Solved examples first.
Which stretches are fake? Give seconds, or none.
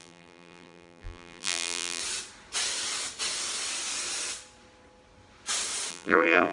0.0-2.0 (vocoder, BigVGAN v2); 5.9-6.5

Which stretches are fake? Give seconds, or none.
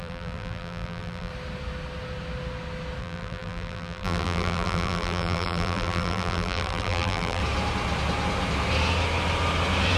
0.0-1.3 (vocoder, BigVGAN v2); 3.0-7.4